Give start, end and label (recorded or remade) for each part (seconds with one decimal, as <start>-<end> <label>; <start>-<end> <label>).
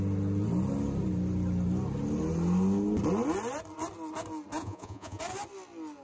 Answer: 0.0-4.6 recorded; 4.6-5.2 remade; 5.2-6.0 recorded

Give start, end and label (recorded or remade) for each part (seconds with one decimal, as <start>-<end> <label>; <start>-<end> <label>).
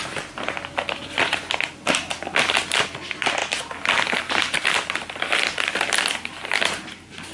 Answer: 0.0-1.0 recorded; 1.0-1.5 remade; 1.5-7.3 recorded